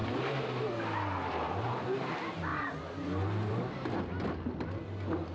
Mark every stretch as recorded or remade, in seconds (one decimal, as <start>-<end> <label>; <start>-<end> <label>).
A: 0.0-5.3 recorded